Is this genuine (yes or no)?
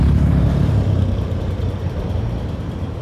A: no